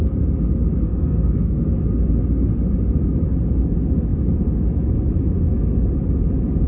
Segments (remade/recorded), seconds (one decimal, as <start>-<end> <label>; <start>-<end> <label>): 0.0-0.8 recorded; 0.8-1.6 remade; 1.6-6.7 recorded